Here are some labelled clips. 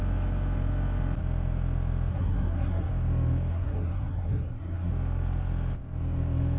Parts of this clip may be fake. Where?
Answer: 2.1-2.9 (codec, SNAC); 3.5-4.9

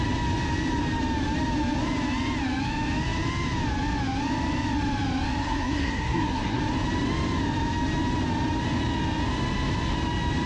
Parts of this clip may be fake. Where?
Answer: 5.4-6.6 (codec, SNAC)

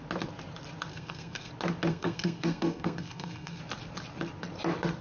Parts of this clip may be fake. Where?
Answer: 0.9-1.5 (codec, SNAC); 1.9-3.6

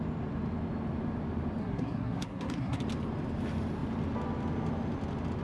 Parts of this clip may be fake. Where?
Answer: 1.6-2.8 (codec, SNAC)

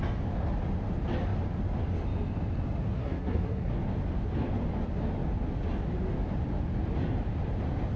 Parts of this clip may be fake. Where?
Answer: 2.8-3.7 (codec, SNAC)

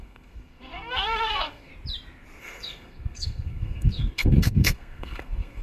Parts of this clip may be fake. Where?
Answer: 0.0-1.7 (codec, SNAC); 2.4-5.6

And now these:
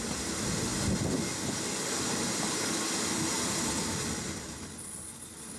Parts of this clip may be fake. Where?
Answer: none

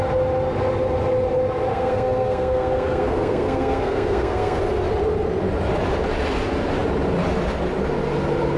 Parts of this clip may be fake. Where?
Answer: 1.7-4.6 (codec, SNAC)